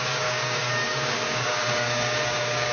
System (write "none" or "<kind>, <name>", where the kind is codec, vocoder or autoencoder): codec, DAC